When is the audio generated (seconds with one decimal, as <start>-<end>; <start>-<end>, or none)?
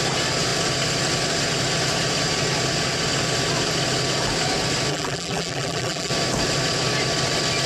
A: 4.9-6.1